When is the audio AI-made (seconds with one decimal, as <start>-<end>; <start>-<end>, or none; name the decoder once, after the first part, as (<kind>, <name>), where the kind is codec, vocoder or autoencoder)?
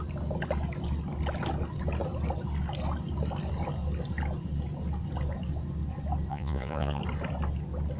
6.3-7.0 (vocoder, Vocos)